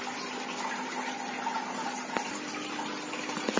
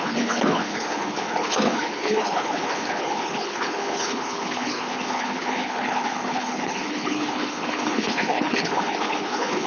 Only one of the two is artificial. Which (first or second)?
second